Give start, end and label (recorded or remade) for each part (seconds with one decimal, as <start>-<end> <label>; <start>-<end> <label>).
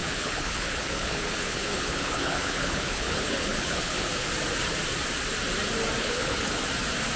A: 0.0-4.3 remade; 4.3-6.0 recorded; 6.0-6.6 remade; 6.6-7.2 recorded